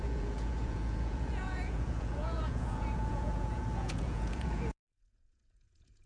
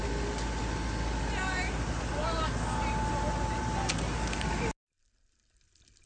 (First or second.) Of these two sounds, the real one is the second